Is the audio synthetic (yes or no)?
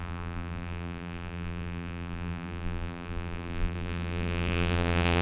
yes